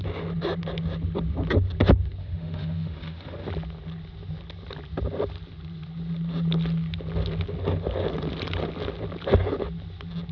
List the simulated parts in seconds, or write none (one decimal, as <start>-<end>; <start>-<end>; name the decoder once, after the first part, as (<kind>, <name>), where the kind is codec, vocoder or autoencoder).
2.2-3.5 (autoencoder, DAC-VAE)